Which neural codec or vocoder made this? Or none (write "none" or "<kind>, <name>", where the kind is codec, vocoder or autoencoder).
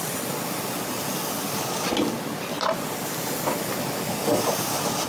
none